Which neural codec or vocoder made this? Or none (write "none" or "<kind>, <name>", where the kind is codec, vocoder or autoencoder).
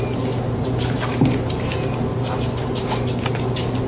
none